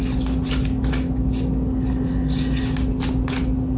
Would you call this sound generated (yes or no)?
no